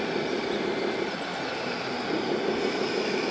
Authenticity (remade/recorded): recorded